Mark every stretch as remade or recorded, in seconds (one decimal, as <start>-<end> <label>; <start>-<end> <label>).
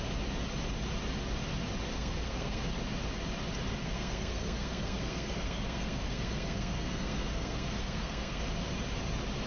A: 0.0-1.9 recorded; 1.9-2.6 remade; 2.6-3.8 recorded; 3.8-8.4 remade; 8.4-9.5 recorded